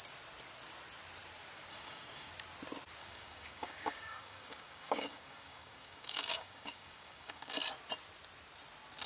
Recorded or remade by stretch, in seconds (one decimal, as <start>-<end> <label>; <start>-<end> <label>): 0.0-1.7 recorded; 1.7-2.3 remade; 2.3-3.0 recorded; 3.0-7.5 remade; 7.5-9.1 recorded